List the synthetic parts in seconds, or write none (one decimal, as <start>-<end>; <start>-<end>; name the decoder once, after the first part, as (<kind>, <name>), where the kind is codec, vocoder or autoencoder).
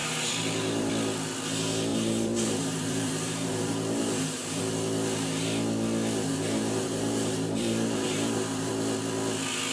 0.0-0.9 (vocoder, BigVGAN v2); 1.9-4.6; 6.3-8.7